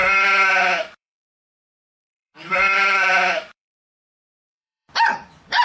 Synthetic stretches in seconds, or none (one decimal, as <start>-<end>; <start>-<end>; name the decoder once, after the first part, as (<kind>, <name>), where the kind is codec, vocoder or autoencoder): 0.6-5.6 (vocoder, BigVGAN v2)